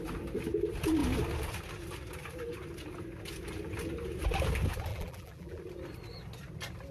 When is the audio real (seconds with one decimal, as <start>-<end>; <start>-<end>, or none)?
0.0-4.9; 5.6-6.9